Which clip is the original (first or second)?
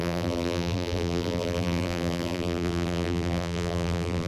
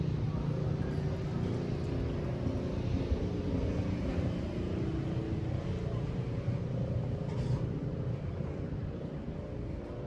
second